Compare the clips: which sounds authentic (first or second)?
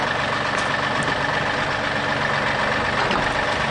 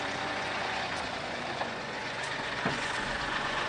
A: first